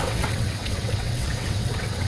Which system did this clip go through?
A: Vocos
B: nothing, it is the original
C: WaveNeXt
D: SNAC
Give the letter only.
C